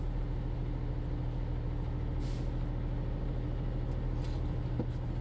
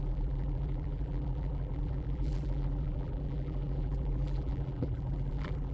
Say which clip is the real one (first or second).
first